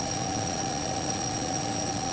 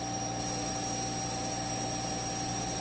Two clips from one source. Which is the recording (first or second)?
second